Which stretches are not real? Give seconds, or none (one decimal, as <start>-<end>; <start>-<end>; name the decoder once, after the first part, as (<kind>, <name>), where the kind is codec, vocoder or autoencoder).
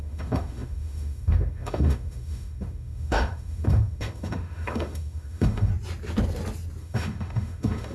0.0-5.7 (autoencoder, DAC-VAE); 6.8-7.9